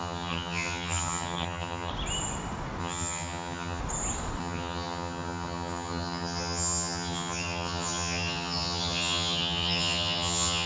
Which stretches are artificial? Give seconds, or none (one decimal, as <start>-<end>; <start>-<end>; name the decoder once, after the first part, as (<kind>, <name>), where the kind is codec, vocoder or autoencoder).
0.0-1.9 (vocoder, HiFi-GAN); 2.8-3.8; 4.4-10.7